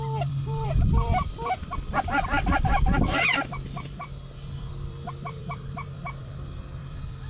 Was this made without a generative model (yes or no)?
no